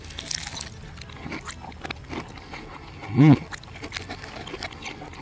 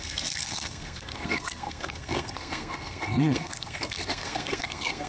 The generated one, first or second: second